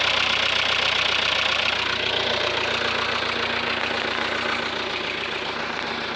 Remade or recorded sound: recorded